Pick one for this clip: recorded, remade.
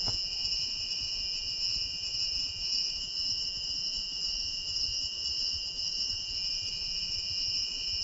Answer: remade